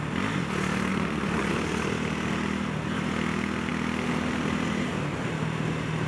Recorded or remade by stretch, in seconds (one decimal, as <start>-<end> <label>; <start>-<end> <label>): 0.0-0.9 recorded; 0.9-1.5 remade; 1.5-6.1 recorded